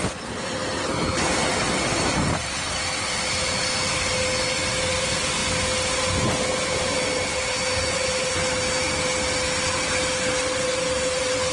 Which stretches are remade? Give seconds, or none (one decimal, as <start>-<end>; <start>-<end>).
none